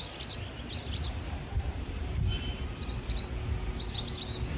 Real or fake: real